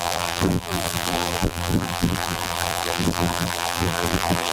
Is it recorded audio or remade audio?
remade